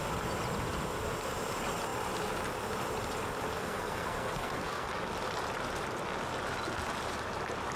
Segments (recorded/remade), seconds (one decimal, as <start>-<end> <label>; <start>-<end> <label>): 0.0-3.5 recorded; 3.5-4.9 remade; 4.9-7.8 recorded